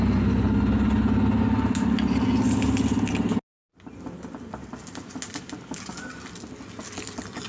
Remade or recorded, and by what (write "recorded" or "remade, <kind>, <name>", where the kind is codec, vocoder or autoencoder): recorded